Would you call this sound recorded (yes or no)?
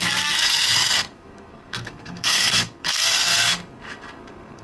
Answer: no